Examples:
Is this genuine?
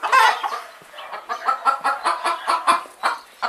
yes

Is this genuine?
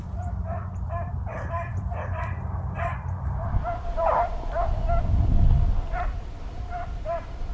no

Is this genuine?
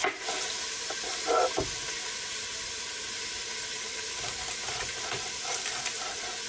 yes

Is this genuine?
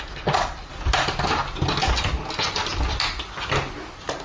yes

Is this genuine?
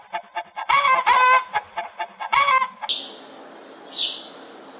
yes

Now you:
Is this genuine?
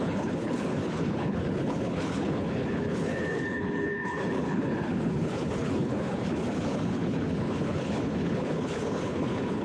no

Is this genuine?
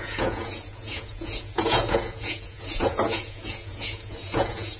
no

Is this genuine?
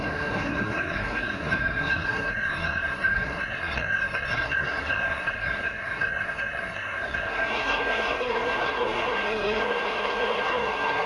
no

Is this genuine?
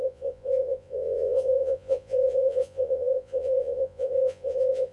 no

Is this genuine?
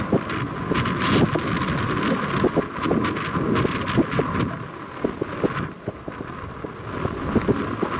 yes